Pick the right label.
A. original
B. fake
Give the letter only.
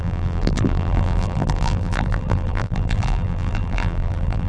B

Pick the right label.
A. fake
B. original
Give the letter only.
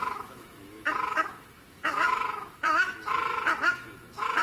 A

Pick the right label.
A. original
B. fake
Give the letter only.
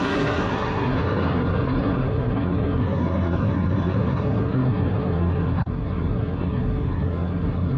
B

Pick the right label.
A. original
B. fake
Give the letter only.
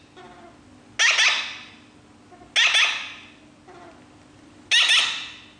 A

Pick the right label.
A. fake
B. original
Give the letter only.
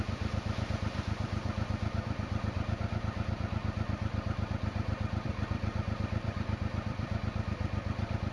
A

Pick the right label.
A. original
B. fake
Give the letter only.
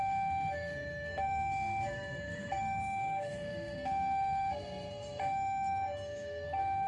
B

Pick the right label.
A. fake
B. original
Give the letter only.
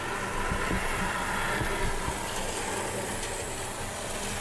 B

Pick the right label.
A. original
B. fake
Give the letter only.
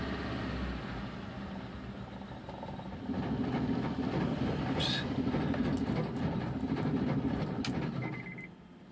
A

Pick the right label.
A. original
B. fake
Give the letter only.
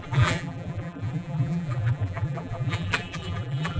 B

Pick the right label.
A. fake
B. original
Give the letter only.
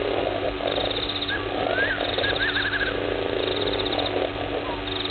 B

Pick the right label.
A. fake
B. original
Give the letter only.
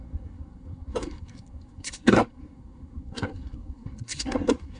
A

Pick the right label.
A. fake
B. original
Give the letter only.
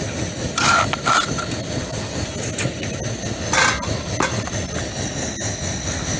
B